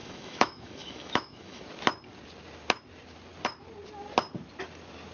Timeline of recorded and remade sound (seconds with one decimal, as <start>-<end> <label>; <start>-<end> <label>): 0.0-1.6 remade; 1.6-5.1 recorded